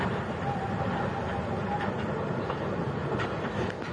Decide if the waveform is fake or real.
real